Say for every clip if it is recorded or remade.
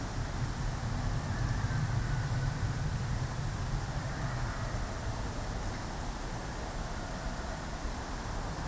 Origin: recorded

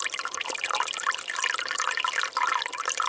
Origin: recorded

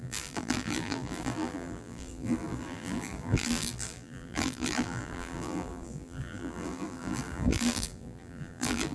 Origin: remade